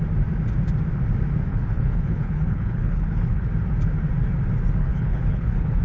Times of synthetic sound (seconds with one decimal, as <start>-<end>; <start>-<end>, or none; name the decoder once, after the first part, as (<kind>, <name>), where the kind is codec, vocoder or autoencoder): 1.5-3.5 (codec, HILCodec); 4.9-5.8